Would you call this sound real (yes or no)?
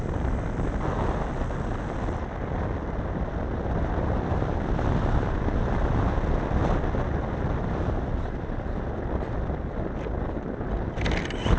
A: yes